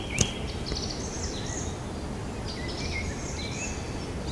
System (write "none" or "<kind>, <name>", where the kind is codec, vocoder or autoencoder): none